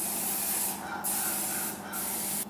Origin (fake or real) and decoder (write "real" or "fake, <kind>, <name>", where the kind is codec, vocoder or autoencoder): real